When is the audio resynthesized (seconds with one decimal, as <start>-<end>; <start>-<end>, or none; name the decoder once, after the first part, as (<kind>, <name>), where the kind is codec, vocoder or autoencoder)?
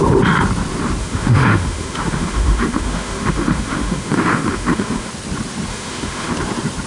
1.0-5.1 (autoencoder, DAC-VAE); 5.7-6.3